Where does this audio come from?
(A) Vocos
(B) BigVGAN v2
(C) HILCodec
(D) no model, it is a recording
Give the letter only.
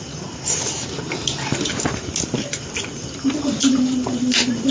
D